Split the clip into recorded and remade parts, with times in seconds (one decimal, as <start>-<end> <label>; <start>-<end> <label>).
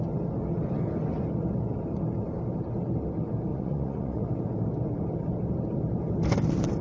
0.0-3.5 recorded; 3.5-4.3 remade; 4.3-6.8 recorded